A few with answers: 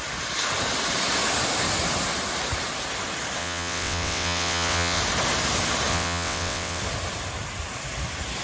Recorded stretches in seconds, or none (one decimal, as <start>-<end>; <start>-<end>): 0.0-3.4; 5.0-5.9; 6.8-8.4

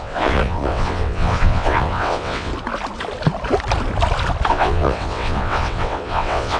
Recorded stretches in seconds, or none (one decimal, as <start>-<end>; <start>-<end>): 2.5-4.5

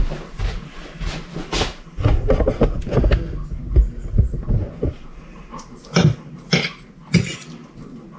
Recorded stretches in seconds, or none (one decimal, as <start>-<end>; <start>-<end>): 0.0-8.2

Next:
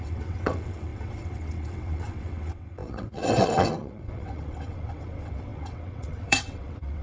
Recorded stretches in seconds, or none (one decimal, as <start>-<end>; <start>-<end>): none

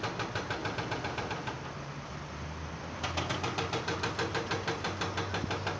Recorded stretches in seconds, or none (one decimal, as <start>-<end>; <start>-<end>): 0.0-5.8

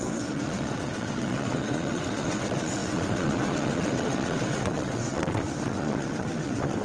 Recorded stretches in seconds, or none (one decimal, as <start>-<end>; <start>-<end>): none